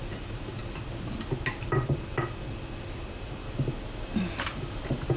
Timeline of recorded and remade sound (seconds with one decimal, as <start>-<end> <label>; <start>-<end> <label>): 0.0-5.2 recorded